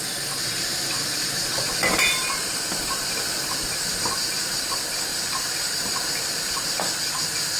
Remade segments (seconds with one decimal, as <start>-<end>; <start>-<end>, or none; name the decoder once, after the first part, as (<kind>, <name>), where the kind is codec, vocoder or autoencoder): 0.7-3.9 (vocoder, BigVGAN v2); 5.1-6.9